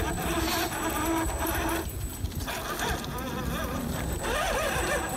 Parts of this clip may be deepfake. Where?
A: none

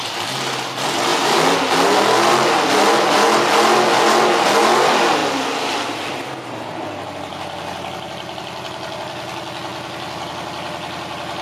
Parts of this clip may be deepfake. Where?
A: none

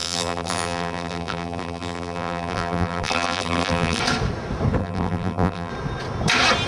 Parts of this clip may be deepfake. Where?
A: 0.0-4.0 (vocoder, BigVGAN v2); 4.8-5.7

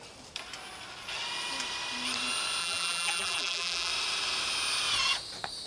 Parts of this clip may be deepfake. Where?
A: 2.6-3.9 (vocoder, BigVGAN v2)